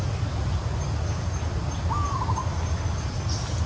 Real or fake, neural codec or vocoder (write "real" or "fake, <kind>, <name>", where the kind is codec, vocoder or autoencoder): real